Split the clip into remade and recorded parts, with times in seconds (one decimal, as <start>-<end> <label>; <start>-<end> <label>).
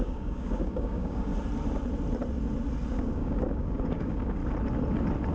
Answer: 0.0-1.3 remade; 1.3-2.9 recorded; 2.9-4.4 remade; 4.4-5.3 recorded